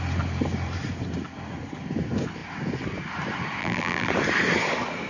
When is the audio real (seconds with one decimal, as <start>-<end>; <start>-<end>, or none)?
0.0-3.6; 4.1-5.1